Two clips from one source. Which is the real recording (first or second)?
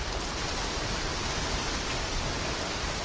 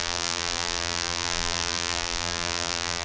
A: first